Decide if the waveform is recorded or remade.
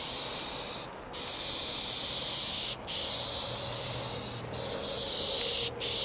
recorded